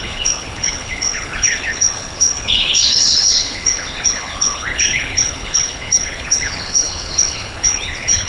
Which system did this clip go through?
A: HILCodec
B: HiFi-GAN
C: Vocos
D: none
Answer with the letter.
A